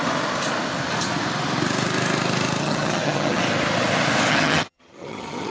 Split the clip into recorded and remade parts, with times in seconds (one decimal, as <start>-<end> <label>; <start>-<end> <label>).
0.0-2.6 recorded; 2.6-3.4 remade; 3.4-4.3 recorded; 4.3-5.5 remade